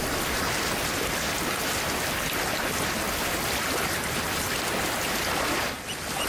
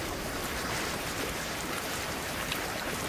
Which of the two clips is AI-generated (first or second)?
second